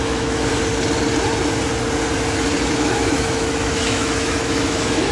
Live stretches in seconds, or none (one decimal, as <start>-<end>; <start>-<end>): 0.5-2.7